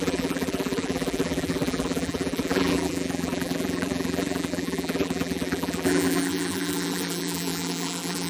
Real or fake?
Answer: fake